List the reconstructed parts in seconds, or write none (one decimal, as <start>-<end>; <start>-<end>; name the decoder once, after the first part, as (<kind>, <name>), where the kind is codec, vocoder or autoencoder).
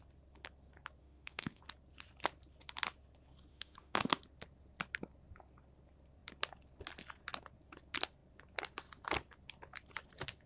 1.0-1.6 (autoencoder, DAC-VAE); 3.5-4.1